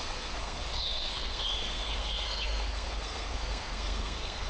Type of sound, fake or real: fake